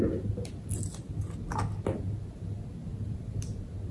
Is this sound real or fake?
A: real